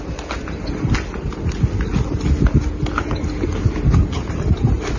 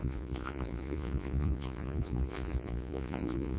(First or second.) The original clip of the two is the first